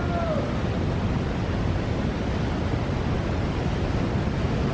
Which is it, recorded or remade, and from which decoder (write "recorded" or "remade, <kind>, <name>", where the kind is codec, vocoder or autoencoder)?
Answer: recorded